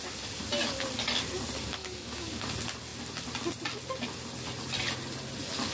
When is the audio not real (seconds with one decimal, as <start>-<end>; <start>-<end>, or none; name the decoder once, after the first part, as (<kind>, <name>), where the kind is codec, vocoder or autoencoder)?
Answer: 1.8-2.5 (codec, DAC)